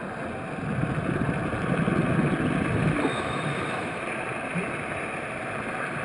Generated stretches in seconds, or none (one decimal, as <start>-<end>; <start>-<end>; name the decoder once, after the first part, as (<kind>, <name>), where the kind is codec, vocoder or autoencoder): 3.1-4.0 (autoencoder, DAC-VAE)